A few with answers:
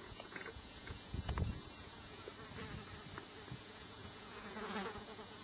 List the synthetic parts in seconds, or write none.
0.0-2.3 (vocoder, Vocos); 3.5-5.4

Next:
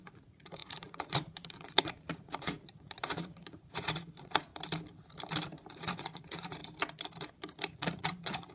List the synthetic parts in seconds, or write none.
0.0-4.5 (vocoder, Vocos); 5.7-6.6; 7.8-8.5